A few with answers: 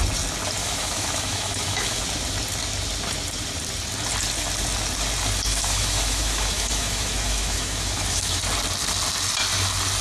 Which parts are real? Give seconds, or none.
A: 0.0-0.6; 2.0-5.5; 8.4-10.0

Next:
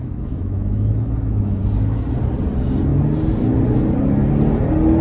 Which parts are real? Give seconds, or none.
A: 1.6-5.0